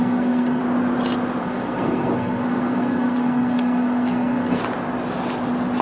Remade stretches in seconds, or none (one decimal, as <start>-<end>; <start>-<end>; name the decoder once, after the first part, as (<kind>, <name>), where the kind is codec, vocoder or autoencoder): 0.0-0.6 (codec, SNAC); 1.4-4.6